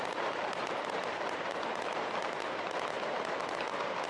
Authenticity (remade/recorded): recorded